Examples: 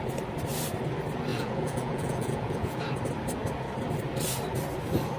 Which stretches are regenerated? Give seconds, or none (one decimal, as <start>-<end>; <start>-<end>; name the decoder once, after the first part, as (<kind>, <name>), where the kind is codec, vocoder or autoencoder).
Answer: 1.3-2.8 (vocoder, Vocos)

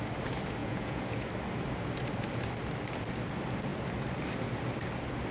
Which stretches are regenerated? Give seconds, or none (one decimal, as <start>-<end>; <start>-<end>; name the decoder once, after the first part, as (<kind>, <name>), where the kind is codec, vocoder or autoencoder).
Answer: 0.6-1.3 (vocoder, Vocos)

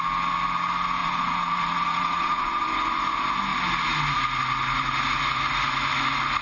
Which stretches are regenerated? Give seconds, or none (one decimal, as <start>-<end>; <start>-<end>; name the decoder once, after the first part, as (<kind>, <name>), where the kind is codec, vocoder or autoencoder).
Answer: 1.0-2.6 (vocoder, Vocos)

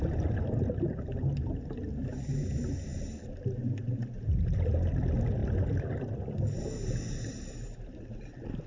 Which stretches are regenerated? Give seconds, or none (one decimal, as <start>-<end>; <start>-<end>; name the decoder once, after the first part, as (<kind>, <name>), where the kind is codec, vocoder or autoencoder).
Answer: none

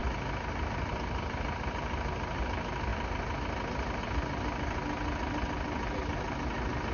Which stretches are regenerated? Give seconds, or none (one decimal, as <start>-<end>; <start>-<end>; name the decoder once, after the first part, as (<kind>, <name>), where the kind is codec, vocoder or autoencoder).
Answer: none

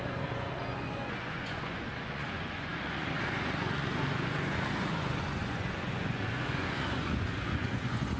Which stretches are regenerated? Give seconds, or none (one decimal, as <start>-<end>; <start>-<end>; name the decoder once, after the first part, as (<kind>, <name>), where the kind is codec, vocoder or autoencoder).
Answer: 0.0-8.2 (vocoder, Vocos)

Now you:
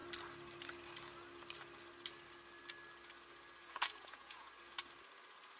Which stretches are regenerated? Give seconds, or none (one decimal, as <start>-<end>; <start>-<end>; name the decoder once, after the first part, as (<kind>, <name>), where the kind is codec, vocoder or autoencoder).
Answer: 3.6-4.5 (vocoder, Vocos)